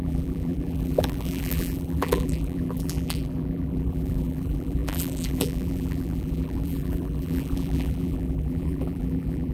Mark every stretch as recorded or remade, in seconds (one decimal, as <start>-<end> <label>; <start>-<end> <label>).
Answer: 0.0-9.5 remade